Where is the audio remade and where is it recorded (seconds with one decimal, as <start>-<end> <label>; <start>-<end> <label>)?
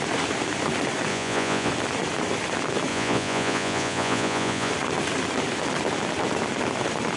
0.0-1.1 recorded; 1.1-1.7 remade; 1.7-2.9 recorded; 2.9-4.7 remade; 4.7-7.2 recorded